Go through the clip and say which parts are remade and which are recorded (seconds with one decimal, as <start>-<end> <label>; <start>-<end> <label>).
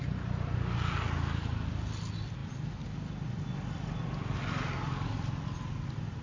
0.0-6.2 recorded